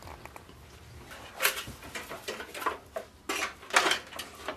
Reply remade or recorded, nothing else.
recorded